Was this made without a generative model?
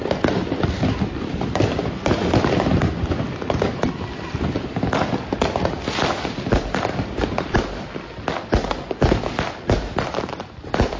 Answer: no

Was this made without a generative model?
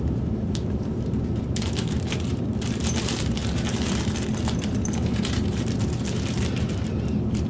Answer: no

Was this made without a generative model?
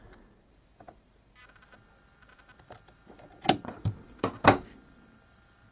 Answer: no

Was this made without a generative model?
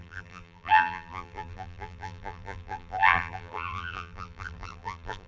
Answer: no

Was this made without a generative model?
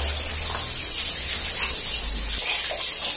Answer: yes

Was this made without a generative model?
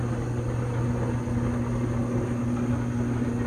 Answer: yes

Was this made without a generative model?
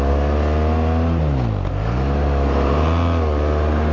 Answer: yes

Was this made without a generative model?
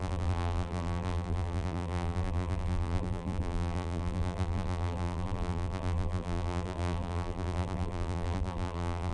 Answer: no